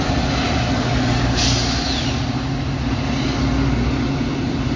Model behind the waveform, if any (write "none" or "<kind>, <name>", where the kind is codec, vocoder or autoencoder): none